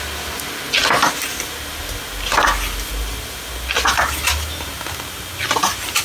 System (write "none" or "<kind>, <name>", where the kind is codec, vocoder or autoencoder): none